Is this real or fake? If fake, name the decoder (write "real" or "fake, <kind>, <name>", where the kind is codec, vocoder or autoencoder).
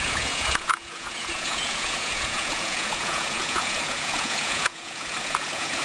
fake, vocoder, Vocos